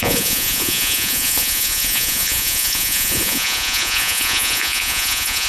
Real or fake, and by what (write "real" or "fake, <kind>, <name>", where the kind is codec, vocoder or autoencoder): fake, vocoder, Vocos